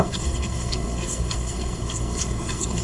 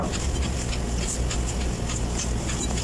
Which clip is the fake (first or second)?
first